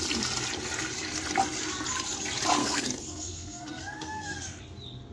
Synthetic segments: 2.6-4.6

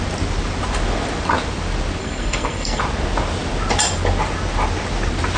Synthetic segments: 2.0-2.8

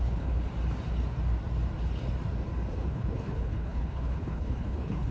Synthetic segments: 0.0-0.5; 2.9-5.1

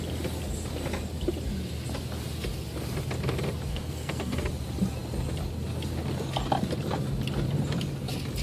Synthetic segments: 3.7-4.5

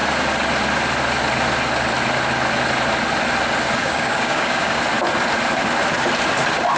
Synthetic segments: 3.8-4.8